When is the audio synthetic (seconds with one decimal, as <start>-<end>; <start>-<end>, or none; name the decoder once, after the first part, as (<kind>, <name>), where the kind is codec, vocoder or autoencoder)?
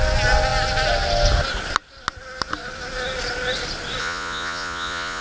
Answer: 4.0-5.2 (vocoder, Vocos)